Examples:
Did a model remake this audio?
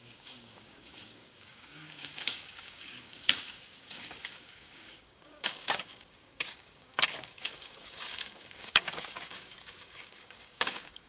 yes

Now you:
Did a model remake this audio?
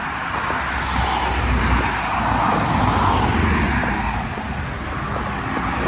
no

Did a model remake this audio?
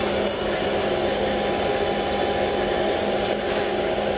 no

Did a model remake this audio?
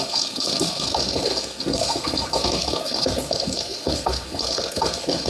yes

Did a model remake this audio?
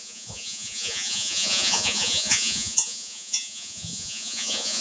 yes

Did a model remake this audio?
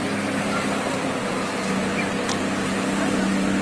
no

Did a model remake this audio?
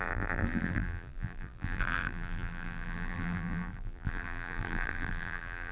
yes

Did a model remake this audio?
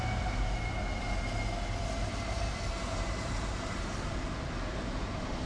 no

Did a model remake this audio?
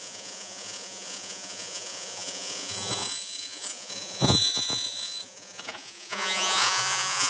yes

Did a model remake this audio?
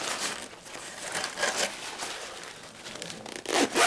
no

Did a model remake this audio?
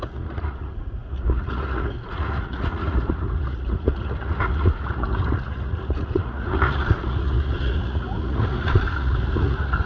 yes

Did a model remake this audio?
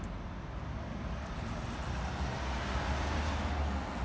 no